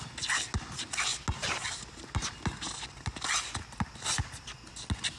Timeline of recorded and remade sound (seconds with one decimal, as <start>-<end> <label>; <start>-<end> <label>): 0.0-5.2 recorded